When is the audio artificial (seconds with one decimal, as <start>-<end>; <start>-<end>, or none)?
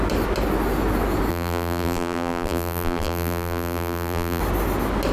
1.3-4.4